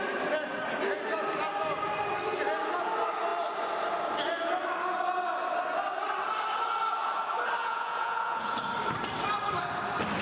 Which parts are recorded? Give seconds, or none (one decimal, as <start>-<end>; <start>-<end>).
0.0-7.6; 8.7-10.2